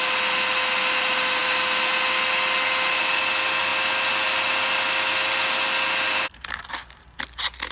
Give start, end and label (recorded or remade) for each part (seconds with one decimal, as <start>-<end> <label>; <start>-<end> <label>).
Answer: 0.0-7.7 recorded